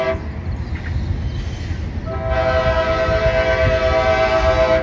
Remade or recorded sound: recorded